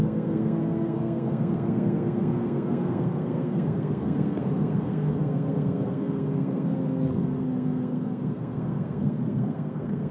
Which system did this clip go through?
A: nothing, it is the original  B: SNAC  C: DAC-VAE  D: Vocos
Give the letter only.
B